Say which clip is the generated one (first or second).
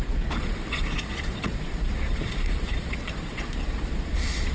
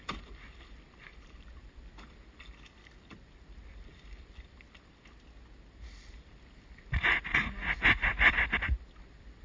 first